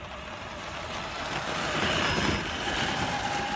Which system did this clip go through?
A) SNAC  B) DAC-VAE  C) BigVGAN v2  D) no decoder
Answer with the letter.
D